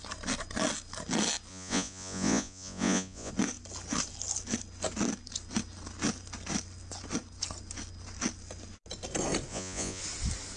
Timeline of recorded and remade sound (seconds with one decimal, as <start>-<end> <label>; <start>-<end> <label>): 0.0-1.5 recorded; 1.5-3.3 remade; 3.3-9.5 recorded; 9.5-10.0 remade; 10.0-10.6 recorded